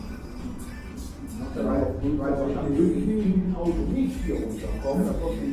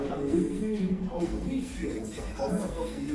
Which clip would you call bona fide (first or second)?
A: first